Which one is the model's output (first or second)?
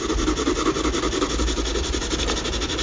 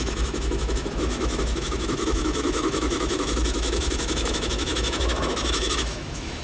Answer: second